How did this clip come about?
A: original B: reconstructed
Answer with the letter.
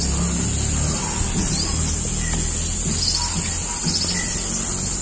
A